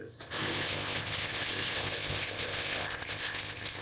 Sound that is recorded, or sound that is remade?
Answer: remade